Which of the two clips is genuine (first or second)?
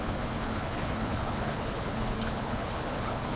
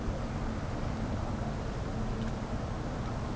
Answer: second